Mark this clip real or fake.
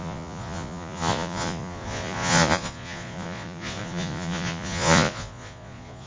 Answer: fake